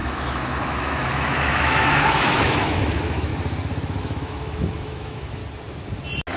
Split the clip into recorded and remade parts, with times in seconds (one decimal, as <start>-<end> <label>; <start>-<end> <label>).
0.0-3.3 remade; 3.3-4.0 recorded; 4.0-5.4 remade; 5.4-6.4 recorded